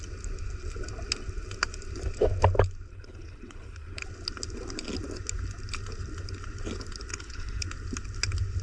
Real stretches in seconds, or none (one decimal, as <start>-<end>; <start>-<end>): 0.0-2.9; 4.0-7.1; 7.6-8.6